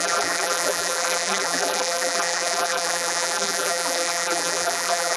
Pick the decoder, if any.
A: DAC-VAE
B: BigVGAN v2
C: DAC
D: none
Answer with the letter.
B